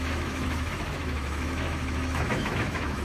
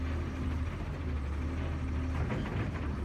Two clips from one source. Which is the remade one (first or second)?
first